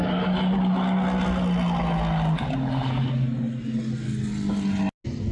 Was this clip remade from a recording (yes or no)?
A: no